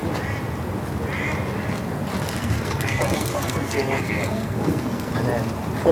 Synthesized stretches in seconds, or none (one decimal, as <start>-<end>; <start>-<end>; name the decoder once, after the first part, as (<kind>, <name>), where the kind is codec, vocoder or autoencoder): 2.3-5.1 (codec, SNAC)